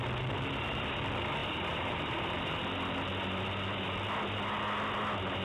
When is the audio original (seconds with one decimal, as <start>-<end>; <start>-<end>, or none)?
0.0-1.4; 2.6-5.4